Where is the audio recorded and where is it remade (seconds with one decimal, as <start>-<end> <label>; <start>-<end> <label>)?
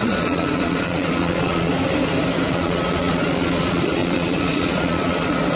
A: 0.0-1.7 remade; 1.7-2.5 recorded; 2.5-5.6 remade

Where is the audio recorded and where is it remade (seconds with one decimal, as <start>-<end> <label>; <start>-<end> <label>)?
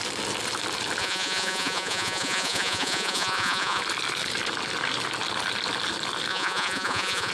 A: 0.0-1.0 recorded; 1.0-3.8 remade; 3.8-6.3 recorded; 6.3-7.3 remade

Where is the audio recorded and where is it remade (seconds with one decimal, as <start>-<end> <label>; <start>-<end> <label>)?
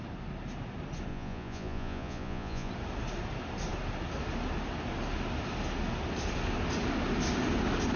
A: 0.0-1.1 recorded; 1.1-2.7 remade; 2.7-8.0 recorded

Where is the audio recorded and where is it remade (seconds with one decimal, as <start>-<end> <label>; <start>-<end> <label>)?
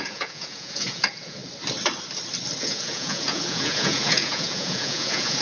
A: 0.0-1.4 remade; 1.4-2.6 recorded; 2.6-5.4 remade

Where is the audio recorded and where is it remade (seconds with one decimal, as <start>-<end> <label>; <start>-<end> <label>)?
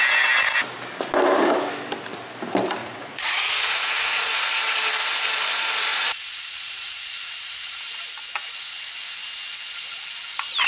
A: 0.0-2.8 recorded; 2.8-4.3 remade; 4.3-5.9 recorded; 5.9-7.8 remade; 7.8-10.7 recorded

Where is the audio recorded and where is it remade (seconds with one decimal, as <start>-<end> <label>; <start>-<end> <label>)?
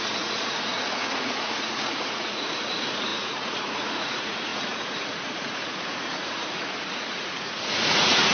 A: 0.0-8.3 remade